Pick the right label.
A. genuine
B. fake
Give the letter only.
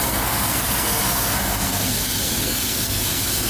B